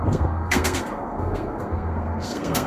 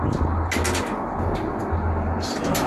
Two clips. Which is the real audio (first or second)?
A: second